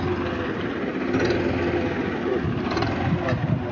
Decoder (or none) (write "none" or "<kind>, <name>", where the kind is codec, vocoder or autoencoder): none